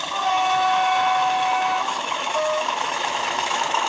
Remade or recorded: remade